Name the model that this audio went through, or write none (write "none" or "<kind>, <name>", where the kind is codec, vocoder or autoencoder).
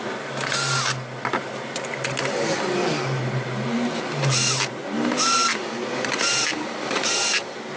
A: none